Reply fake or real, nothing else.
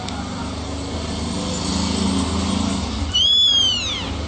real